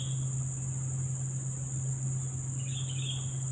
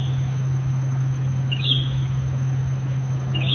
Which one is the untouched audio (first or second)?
first